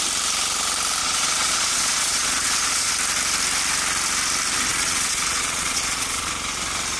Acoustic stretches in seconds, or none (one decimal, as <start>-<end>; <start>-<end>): 0.0-1.0; 2.9-4.7; 6.3-7.0